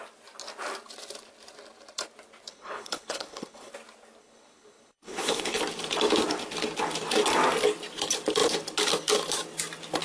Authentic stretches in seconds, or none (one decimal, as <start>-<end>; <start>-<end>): 0.0-2.5; 3.7-4.2; 5.6-10.0